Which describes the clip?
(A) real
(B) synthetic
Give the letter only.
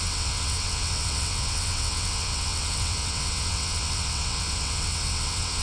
B